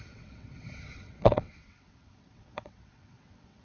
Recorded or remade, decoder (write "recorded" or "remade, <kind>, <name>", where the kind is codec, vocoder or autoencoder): remade, vocoder, WaveNeXt